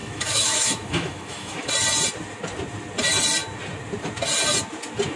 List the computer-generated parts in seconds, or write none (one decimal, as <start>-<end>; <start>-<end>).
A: 0.0-1.7